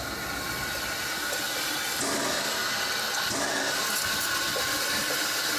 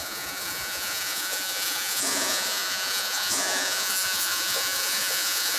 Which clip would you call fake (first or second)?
second